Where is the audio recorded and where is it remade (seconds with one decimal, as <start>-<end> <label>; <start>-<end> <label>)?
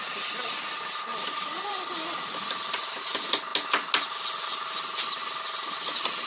0.0-6.3 recorded